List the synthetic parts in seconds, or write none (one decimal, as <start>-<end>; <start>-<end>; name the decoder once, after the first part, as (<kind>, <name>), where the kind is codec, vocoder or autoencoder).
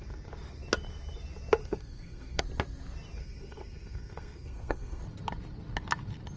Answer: 1.6-2.4 (codec, SNAC); 3.2-5.0